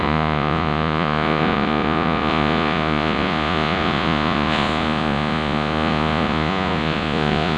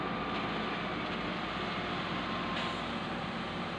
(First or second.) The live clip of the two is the second